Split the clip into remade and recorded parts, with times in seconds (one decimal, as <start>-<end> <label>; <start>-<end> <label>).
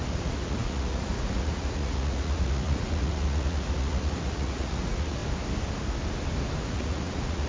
0.0-5.2 remade; 5.2-6.6 recorded; 6.6-7.5 remade